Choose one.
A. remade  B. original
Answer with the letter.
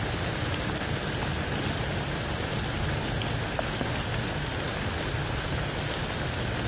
B